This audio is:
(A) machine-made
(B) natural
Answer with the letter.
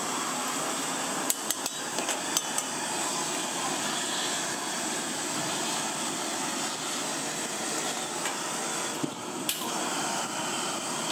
B